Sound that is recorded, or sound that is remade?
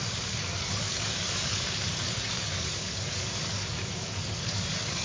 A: remade